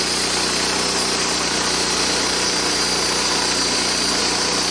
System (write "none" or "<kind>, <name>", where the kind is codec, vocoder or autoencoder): none